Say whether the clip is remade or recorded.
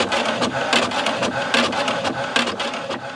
recorded